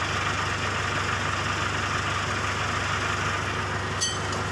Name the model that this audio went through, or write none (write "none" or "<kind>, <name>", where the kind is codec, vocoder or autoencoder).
none